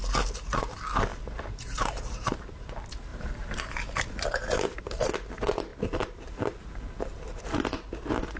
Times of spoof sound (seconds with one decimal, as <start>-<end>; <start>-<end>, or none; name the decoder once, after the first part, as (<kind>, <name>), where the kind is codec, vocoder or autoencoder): 1.1-2.7 (vocoder, BigVGAN v2); 3.1-5.1; 5.7-7.4